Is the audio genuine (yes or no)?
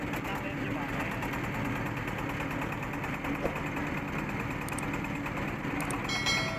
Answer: yes